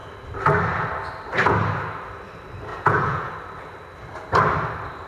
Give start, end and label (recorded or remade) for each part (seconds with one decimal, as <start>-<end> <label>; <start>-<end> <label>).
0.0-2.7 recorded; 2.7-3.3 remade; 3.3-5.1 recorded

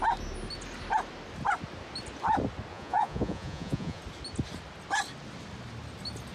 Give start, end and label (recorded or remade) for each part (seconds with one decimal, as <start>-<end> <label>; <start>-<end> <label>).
0.0-2.7 recorded; 2.7-4.0 remade; 4.0-6.3 recorded

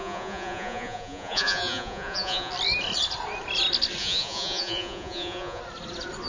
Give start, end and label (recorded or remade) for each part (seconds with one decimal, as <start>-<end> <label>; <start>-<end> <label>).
0.0-2.5 remade; 2.5-4.0 recorded; 4.0-5.6 remade; 5.6-6.3 recorded

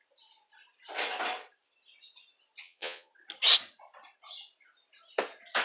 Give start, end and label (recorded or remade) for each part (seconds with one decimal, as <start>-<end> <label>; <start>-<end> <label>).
0.0-2.6 recorded; 2.6-3.1 remade; 3.1-5.6 recorded

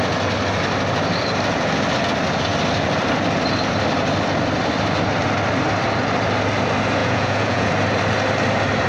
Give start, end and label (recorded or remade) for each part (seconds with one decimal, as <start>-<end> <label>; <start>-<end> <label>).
0.0-7.0 recorded; 7.0-7.7 remade; 7.7-8.9 recorded

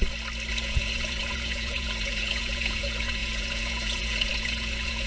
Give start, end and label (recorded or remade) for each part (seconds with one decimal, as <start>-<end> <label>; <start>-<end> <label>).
0.0-0.5 recorded; 0.5-5.1 remade

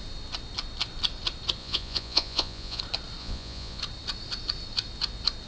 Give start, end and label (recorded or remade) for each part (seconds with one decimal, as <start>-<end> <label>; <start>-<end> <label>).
0.0-1.6 recorded; 1.6-2.8 remade; 2.8-3.2 recorded; 3.2-3.8 remade; 3.8-5.5 recorded

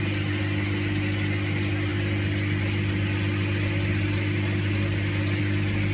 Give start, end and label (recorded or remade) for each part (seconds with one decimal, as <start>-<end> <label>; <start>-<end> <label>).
0.0-5.9 recorded